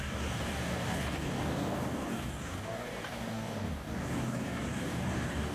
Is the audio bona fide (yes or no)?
no